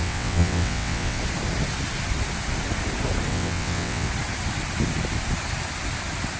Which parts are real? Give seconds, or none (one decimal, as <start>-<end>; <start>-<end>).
1.2-3.3; 4.1-6.4